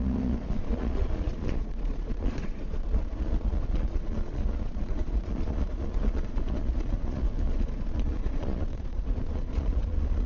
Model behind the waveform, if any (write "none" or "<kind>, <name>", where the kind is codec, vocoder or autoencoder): vocoder, Vocos